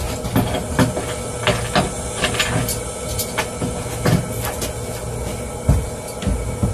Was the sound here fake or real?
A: real